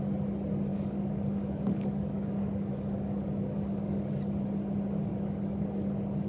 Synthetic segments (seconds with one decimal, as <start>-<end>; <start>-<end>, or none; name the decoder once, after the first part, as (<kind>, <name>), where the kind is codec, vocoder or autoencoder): 0.7-4.1 (codec, DAC); 5.1-6.3